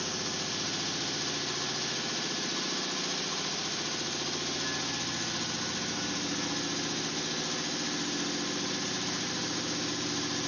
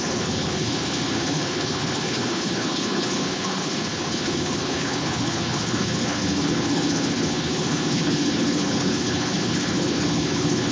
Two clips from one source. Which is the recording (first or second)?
first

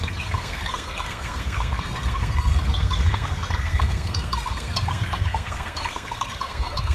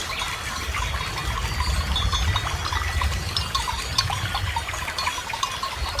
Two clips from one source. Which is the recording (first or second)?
second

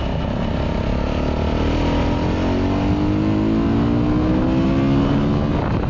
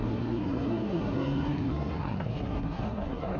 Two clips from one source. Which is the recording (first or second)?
first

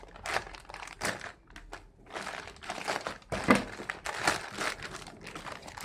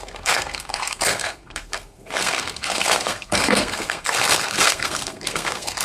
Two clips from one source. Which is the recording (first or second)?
first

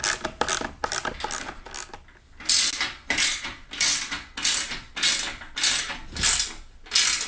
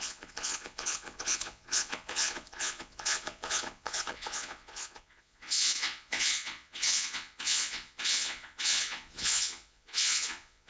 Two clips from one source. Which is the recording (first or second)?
first